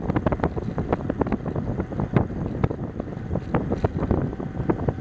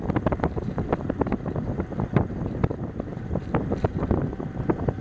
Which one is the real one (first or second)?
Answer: first